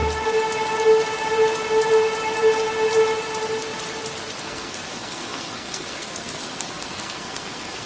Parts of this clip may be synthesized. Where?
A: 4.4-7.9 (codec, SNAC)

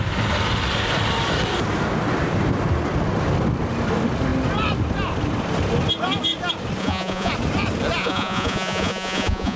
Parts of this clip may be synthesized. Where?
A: 6.8-7.3 (vocoder, Vocos); 8.0-9.6